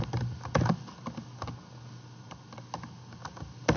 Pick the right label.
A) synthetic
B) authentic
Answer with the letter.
B